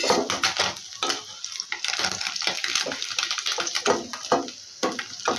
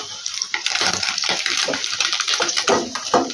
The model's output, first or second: second